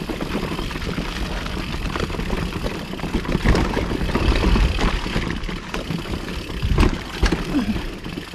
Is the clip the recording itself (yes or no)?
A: no